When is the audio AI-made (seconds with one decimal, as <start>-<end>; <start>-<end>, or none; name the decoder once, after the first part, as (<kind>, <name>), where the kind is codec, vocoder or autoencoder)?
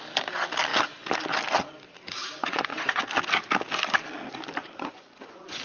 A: 2.2-3.0 (vocoder, Vocos); 4.6-5.6